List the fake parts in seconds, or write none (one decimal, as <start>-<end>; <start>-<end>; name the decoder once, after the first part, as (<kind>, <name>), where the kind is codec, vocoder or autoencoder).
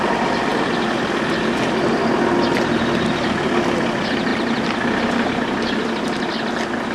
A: none